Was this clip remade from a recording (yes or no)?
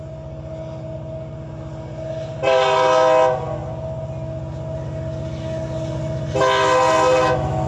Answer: no